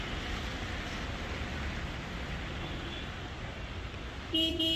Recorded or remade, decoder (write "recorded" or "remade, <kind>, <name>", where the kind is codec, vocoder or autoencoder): recorded